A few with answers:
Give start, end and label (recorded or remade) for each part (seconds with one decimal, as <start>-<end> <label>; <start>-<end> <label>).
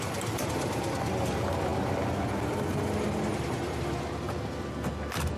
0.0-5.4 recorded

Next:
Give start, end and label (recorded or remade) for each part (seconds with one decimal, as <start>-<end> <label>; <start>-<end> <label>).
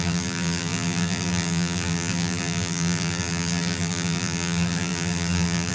0.0-5.7 remade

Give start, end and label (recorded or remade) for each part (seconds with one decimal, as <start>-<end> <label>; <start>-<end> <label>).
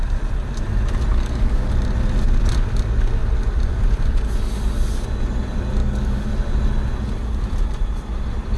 0.0-1.1 recorded; 1.1-1.7 remade; 1.7-5.8 recorded; 5.8-6.3 remade; 6.3-8.6 recorded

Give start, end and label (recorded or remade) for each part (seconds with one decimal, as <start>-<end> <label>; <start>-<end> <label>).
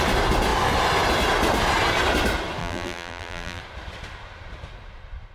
0.0-2.6 recorded; 2.6-3.6 remade; 3.6-5.3 recorded